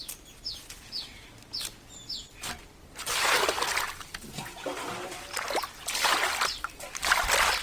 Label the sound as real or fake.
real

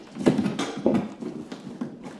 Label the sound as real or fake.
real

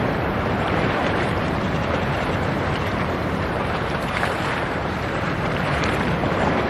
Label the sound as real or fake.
fake